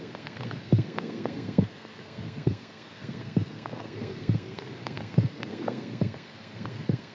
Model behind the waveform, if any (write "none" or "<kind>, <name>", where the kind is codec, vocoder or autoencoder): codec, SNAC